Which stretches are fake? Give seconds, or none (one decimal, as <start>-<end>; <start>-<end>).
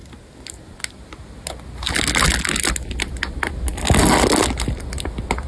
none